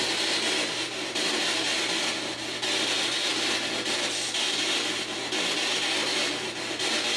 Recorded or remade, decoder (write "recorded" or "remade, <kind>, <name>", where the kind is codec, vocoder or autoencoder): recorded